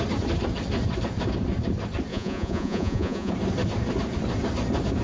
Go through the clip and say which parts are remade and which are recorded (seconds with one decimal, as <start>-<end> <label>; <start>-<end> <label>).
0.0-2.1 recorded; 2.1-3.3 remade; 3.3-5.0 recorded